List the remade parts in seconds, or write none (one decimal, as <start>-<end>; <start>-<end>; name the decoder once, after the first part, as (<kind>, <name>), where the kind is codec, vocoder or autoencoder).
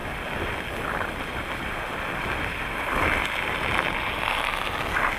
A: none